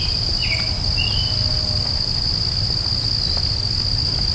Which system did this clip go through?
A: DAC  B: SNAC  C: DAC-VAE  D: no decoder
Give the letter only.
D